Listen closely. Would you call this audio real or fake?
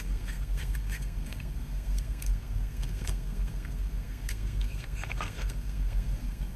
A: fake